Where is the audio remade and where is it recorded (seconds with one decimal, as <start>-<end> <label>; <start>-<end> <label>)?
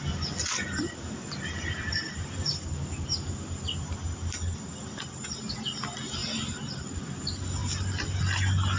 0.0-8.8 recorded